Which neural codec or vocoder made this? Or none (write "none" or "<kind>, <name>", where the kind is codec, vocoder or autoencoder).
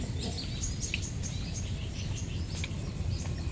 none